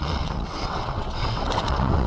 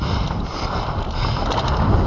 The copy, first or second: first